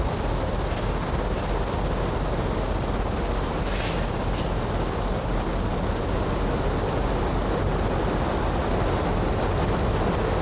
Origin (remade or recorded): recorded